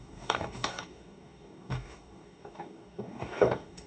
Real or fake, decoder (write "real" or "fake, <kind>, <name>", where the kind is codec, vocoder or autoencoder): fake, codec, DAC